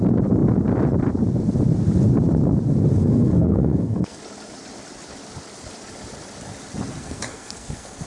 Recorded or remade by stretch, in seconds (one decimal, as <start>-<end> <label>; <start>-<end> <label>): 0.0-2.9 recorded; 2.9-4.2 remade; 4.2-7.0 recorded; 7.0-8.1 remade